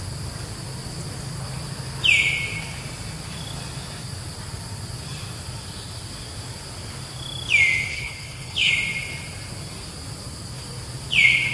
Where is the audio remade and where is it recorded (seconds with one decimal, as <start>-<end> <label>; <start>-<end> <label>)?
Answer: 0.0-7.9 recorded; 7.9-8.7 remade; 8.7-11.5 recorded